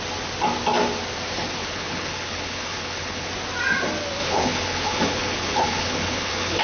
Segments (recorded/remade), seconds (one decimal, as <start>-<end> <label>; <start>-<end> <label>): 0.0-1.6 recorded; 1.6-3.3 remade; 3.3-4.2 recorded; 4.2-6.6 remade